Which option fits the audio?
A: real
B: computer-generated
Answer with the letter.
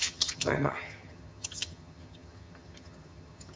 B